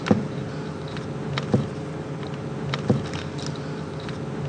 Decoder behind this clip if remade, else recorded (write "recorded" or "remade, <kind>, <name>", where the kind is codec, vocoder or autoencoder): recorded